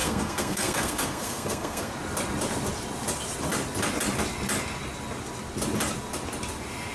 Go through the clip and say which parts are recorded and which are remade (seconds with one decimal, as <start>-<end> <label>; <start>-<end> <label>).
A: 0.0-1.9 remade; 1.9-6.9 recorded